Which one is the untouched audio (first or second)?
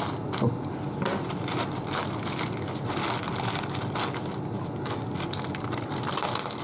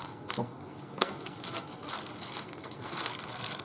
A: first